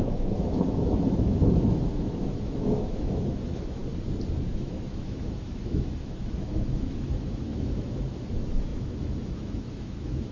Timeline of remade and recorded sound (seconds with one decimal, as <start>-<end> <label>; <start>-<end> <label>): 0.0-3.8 remade; 3.8-4.5 recorded; 4.5-10.3 remade